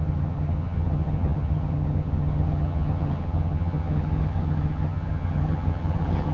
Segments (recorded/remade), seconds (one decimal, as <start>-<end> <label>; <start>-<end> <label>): 0.0-6.3 remade